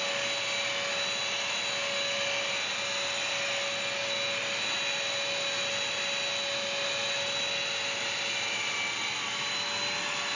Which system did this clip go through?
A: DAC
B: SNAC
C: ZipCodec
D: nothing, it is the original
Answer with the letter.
D